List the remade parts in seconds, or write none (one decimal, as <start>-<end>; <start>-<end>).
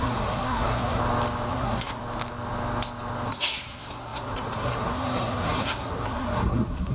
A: 0.0-1.0; 1.5-2.0; 3.3-6.9